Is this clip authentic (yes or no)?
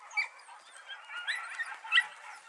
yes